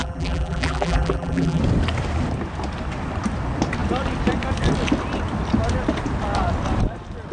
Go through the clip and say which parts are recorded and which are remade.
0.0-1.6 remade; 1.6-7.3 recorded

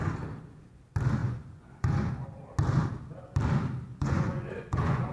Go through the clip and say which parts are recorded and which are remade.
0.0-1.2 recorded; 1.2-2.1 remade; 2.1-3.9 recorded; 3.9-5.1 remade